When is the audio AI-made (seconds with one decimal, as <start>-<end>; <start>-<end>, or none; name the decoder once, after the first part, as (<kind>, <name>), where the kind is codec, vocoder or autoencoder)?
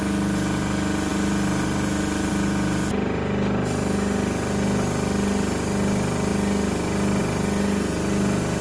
none